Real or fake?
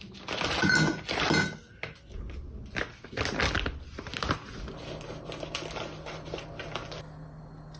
real